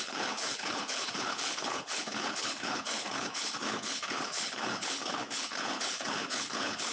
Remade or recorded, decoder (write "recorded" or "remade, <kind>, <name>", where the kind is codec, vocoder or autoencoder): remade, codec, HILCodec